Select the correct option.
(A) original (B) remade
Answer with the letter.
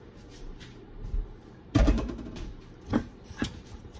B